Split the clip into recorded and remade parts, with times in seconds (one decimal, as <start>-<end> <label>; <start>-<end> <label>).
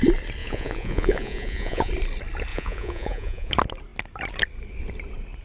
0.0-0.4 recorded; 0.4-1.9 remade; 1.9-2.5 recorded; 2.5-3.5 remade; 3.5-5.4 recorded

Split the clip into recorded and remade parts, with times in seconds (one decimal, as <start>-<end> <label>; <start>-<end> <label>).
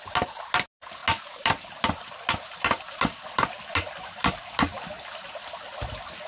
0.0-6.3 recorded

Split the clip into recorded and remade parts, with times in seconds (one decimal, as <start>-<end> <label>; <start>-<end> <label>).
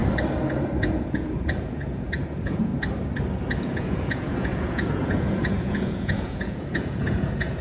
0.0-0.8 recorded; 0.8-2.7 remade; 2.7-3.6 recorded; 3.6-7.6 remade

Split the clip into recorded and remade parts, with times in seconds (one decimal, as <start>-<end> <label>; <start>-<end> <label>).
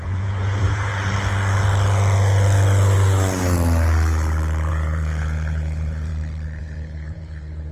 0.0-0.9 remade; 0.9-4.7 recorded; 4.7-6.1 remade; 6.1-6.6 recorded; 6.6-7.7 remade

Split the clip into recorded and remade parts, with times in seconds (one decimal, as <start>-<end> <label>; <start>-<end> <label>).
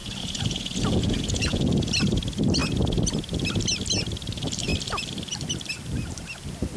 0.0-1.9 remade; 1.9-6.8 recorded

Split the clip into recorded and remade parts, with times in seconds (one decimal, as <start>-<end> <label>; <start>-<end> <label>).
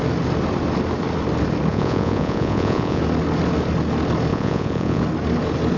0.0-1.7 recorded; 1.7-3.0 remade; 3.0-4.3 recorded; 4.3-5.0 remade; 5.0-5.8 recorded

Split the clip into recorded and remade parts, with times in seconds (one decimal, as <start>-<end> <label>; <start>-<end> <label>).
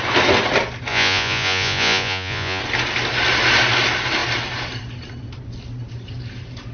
0.0-0.9 recorded; 0.9-2.6 remade; 2.6-6.7 recorded